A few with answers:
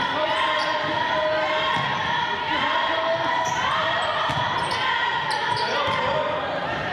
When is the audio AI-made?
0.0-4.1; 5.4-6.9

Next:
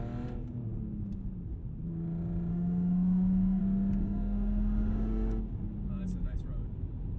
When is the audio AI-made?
2.5-3.6; 4.0-5.4

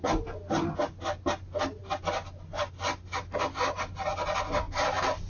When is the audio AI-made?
none